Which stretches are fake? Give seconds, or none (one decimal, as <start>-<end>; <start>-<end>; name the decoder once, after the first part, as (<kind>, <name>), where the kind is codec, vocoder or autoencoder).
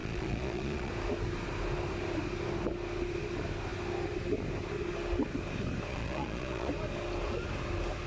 0.0-0.9 (vocoder, Vocos); 5.9-6.7